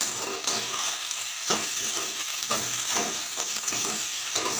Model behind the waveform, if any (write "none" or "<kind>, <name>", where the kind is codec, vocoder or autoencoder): codec, DAC